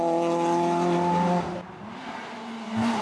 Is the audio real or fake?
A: real